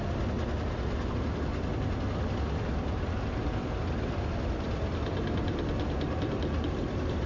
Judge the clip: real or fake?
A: real